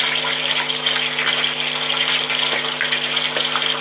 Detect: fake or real real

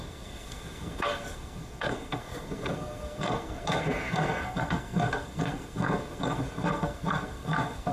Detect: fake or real fake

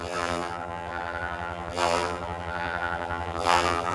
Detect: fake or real fake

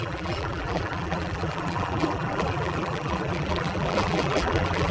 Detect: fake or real fake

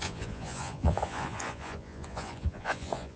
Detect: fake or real fake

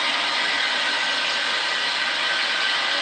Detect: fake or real real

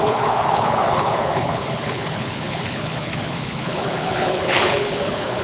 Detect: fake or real fake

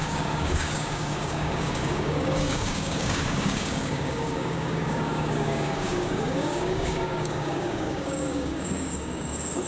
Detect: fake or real fake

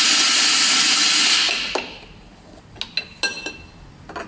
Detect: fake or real real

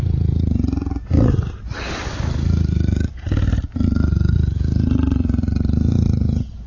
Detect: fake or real real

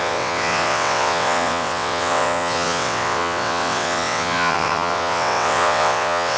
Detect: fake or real fake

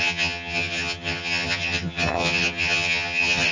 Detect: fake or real fake